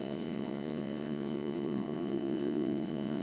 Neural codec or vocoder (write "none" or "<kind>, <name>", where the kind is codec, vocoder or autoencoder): vocoder, WaveNeXt